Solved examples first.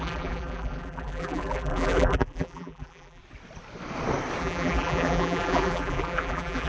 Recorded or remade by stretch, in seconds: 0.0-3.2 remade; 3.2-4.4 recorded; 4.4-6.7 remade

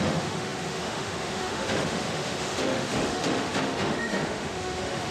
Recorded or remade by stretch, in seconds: 0.0-5.1 remade

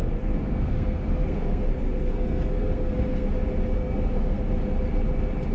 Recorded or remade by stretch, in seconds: 0.0-3.3 remade; 3.3-3.8 recorded; 3.8-4.4 remade; 4.4-5.5 recorded